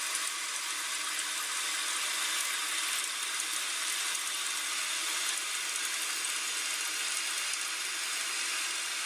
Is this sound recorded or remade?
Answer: recorded